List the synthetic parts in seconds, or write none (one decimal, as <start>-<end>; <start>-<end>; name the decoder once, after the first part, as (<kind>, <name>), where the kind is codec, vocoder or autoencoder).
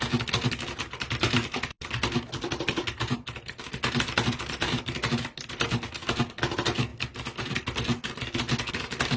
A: none